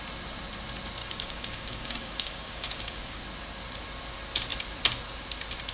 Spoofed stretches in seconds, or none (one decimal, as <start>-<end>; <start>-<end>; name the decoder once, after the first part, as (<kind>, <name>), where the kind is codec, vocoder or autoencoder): 1.0-3.2 (codec, DAC)